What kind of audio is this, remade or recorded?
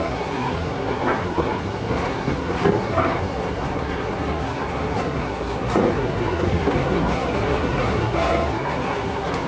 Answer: remade